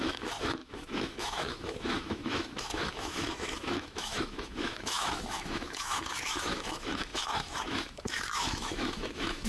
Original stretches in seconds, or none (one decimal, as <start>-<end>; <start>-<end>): none